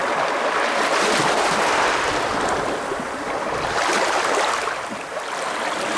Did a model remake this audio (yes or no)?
no